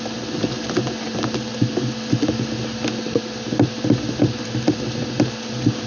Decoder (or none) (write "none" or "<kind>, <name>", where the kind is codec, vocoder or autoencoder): none